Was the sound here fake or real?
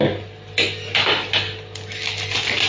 real